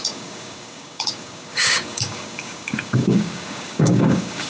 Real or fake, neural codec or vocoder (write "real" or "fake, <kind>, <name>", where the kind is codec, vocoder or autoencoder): fake, codec, DAC